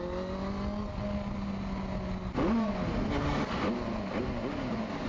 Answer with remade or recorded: recorded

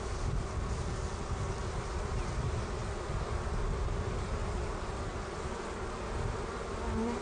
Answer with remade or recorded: recorded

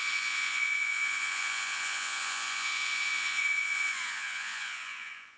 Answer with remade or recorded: remade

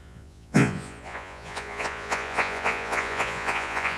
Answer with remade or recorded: remade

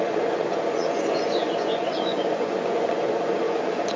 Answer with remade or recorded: remade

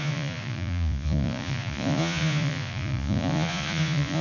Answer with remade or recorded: remade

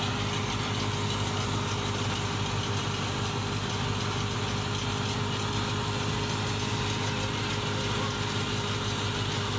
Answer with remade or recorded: recorded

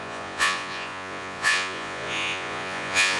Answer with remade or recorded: remade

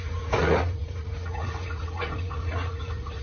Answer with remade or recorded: remade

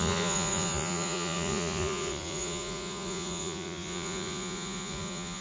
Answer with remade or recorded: remade